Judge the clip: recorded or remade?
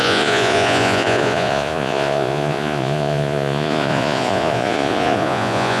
remade